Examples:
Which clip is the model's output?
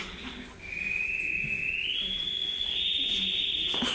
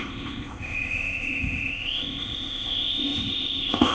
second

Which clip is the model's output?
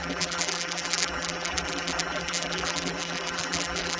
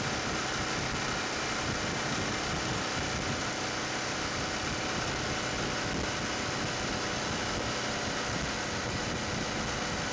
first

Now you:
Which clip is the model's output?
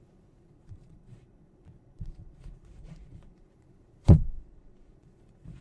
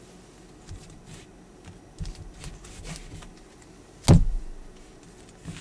first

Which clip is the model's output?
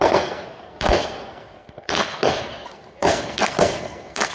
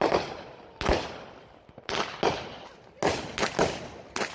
first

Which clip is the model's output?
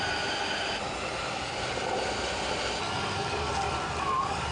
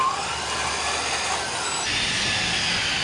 first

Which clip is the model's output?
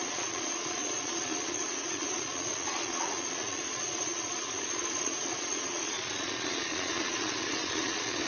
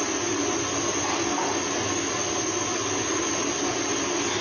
first